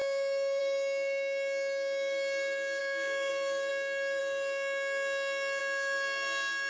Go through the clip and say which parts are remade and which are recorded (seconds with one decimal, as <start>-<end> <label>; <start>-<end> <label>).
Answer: 0.0-0.6 remade; 0.6-2.8 recorded; 2.8-3.3 remade; 3.3-6.7 recorded

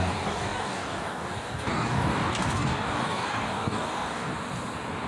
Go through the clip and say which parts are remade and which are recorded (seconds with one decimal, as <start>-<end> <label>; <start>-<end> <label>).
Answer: 0.0-4.3 remade; 4.3-5.1 recorded

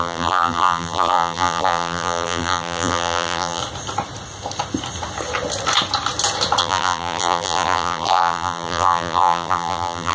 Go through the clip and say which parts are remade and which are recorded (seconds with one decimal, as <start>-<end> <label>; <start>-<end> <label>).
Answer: 0.0-3.6 remade; 3.6-6.6 recorded; 6.6-10.1 remade

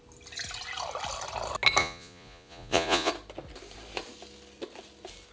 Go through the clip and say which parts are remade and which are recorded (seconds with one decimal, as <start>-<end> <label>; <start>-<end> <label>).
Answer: 0.0-1.8 recorded; 1.8-3.1 remade; 3.1-5.3 recorded